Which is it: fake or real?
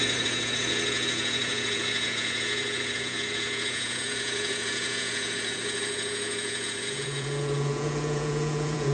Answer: fake